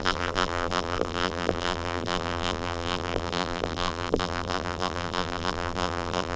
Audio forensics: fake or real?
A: fake